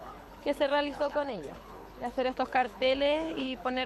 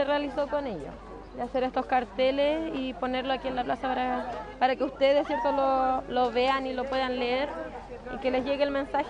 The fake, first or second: first